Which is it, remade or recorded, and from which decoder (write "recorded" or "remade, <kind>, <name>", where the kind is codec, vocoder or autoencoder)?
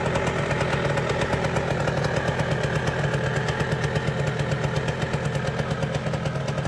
recorded